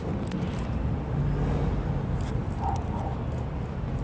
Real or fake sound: real